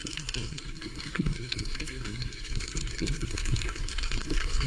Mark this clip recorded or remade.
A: remade